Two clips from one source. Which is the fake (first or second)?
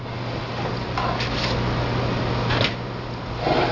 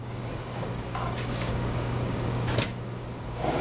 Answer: second